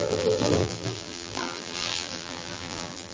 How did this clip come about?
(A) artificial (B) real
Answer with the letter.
A